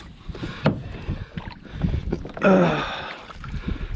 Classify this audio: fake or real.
real